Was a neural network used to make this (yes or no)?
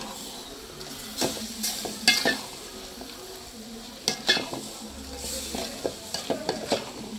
no